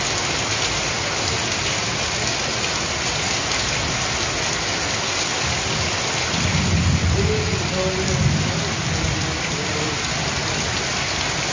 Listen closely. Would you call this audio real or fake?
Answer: real